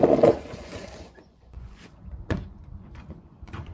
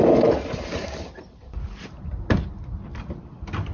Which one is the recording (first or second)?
second